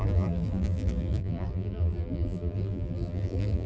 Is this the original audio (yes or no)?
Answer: no